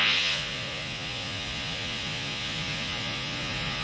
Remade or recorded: remade